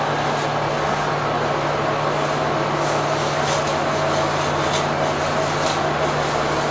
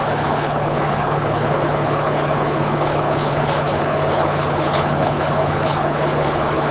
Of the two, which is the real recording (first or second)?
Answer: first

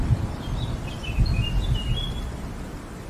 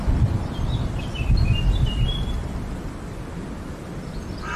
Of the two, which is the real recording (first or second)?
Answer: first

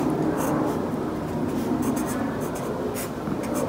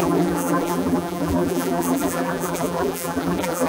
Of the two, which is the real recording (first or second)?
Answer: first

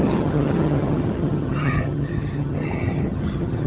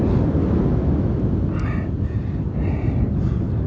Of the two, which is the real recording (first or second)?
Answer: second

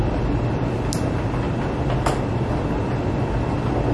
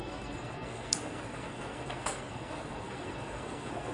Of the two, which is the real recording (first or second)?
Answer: first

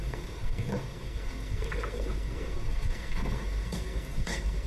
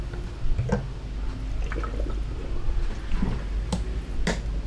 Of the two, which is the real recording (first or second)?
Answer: second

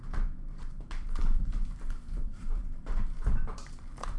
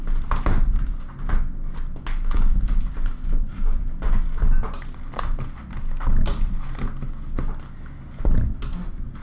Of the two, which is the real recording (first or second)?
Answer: second